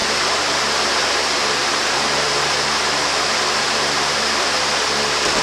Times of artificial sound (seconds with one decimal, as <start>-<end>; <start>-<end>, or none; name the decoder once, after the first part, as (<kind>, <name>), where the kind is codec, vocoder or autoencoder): 0.0-0.8 (vocoder, BigVGAN v2); 1.6-4.8